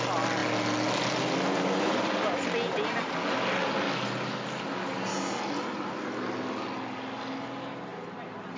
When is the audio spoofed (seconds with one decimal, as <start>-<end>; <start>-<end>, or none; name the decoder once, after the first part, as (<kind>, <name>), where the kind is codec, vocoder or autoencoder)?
none